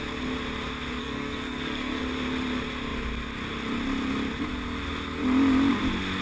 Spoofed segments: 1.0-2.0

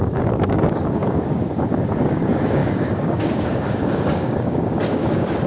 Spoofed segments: 0.0-5.5